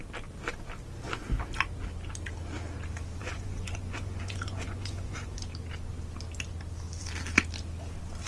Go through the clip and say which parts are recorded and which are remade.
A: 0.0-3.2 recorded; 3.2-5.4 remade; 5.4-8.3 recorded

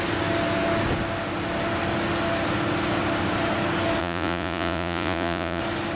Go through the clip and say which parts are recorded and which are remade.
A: 0.0-4.0 recorded; 4.0-5.6 remade; 5.6-6.0 recorded

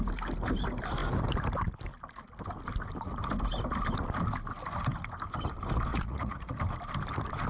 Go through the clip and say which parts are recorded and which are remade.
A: 0.0-5.9 recorded; 5.9-6.6 remade; 6.6-7.5 recorded

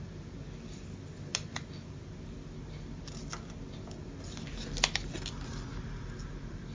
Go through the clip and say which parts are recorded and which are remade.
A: 0.0-6.7 recorded

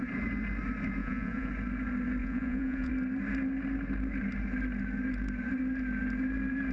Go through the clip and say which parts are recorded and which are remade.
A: 0.0-1.0 recorded; 1.0-1.5 remade; 1.5-2.2 recorded; 2.2-2.9 remade; 2.9-6.7 recorded

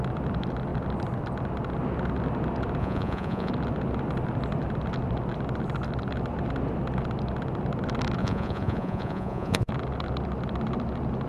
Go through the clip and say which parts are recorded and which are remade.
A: 0.0-2.8 recorded; 2.8-3.5 remade; 3.5-8.2 recorded; 8.2-9.7 remade; 9.7-11.3 recorded

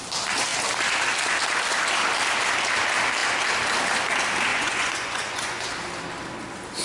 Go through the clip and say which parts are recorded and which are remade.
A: 0.0-4.5 recorded; 4.5-5.6 remade; 5.6-6.8 recorded

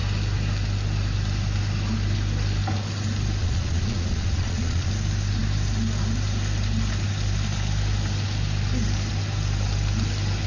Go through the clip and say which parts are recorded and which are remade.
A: 0.0-3.4 recorded; 3.4-4.9 remade; 4.9-10.5 recorded